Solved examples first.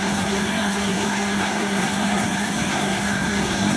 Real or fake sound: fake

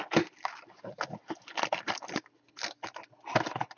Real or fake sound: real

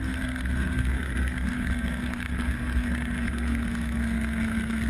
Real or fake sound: fake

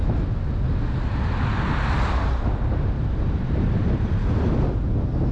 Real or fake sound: real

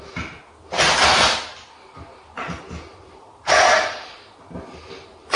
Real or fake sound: real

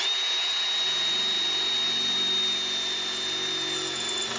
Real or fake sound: real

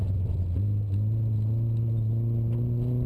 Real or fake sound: real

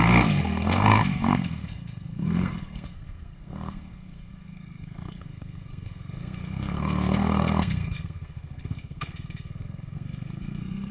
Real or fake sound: fake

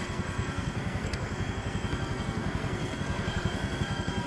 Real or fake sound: fake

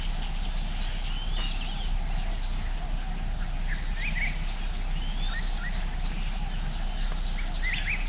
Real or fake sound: real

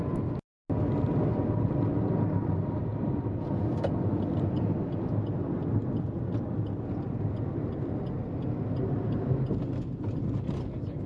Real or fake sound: real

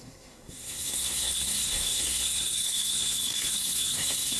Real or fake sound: fake